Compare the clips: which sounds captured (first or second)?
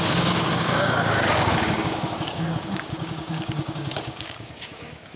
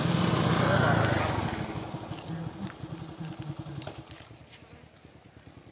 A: second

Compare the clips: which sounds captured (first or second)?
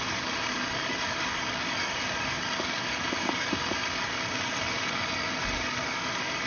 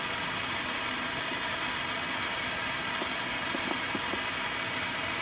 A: second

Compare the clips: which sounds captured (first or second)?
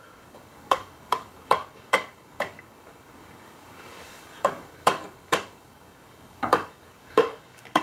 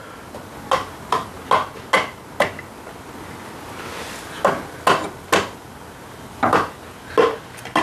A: second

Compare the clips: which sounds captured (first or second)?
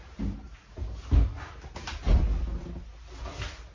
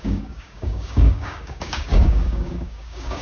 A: first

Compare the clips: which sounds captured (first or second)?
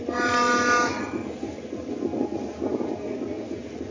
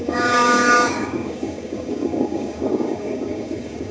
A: first